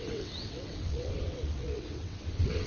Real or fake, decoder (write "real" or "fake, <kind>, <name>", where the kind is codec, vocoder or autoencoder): fake, vocoder, WaveNeXt